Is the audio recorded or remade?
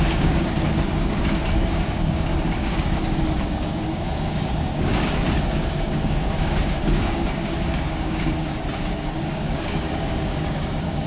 remade